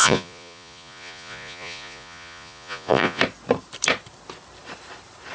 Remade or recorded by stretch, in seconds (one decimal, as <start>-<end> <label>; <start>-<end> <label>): 0.0-3.2 remade; 3.2-5.3 recorded